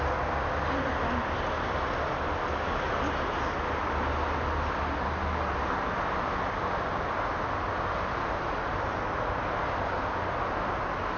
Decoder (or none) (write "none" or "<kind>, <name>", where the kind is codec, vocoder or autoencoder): none